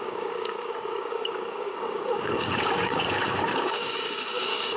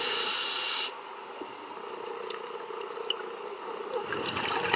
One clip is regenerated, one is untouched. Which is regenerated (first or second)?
first